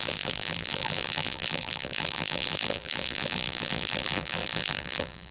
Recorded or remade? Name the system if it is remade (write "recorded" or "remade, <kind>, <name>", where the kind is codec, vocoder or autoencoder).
remade, vocoder, BigVGAN v2